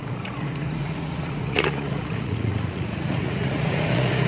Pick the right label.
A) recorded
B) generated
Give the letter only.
B